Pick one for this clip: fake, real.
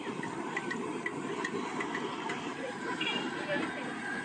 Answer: fake